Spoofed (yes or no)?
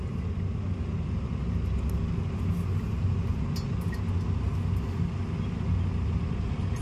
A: no